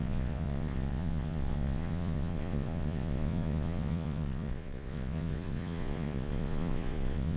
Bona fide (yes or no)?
no